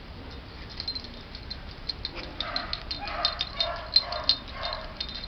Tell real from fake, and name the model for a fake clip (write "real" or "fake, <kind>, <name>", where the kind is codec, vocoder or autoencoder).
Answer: real